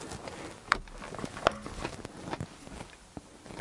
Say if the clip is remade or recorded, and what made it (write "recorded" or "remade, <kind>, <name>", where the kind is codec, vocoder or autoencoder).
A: recorded